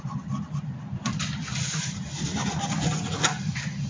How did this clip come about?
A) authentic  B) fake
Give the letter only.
A